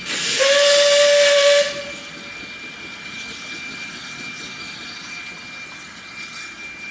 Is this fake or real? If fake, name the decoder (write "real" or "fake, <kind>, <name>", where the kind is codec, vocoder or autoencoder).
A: real